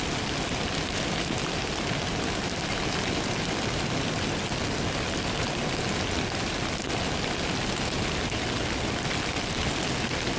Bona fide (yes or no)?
yes